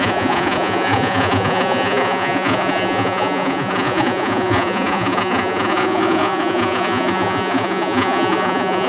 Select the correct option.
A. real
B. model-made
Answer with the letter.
B